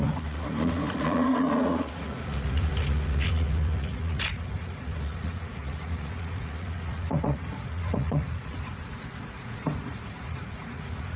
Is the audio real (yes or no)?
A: no